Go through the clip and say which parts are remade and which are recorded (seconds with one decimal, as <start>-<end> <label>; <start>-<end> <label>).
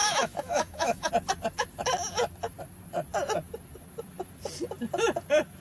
0.0-1.1 remade; 1.1-5.6 recorded